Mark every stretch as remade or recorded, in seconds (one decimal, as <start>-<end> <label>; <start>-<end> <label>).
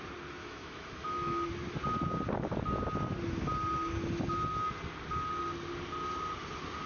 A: 0.0-0.4 recorded; 0.4-1.5 remade; 1.5-6.9 recorded